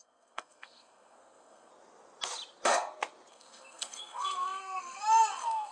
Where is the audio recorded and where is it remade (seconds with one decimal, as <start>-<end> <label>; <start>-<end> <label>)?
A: 0.0-1.7 remade; 1.7-3.3 recorded; 3.3-5.7 remade

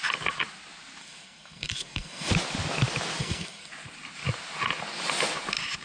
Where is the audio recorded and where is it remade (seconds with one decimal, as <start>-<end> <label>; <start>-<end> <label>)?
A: 0.0-1.0 recorded; 1.0-2.3 remade; 2.3-3.2 recorded; 3.2-3.7 remade; 3.7-5.8 recorded

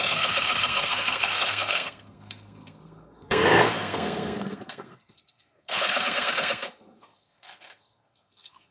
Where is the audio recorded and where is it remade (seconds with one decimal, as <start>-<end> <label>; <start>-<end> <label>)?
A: 0.0-8.7 remade

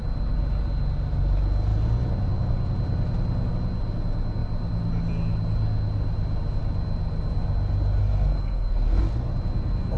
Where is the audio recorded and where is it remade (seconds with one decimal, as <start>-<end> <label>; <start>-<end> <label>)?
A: 0.0-8.0 recorded; 8.0-9.0 remade; 9.0-10.0 recorded

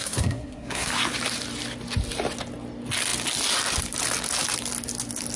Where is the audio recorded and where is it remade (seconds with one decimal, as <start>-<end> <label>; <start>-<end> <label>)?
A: 0.0-0.9 remade; 0.9-5.4 recorded

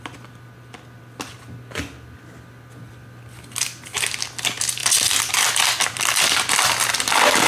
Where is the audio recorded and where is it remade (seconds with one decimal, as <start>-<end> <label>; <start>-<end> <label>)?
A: 0.0-7.5 recorded

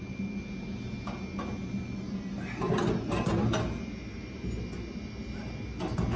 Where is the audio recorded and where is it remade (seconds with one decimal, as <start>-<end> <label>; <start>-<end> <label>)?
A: 0.0-6.2 recorded